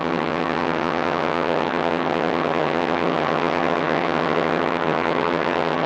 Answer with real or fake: fake